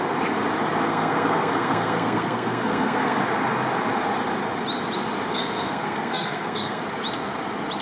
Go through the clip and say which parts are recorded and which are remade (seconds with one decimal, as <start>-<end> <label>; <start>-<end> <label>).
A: 0.0-0.9 recorded; 0.9-3.2 remade; 3.2-5.3 recorded; 5.3-6.8 remade; 6.8-7.8 recorded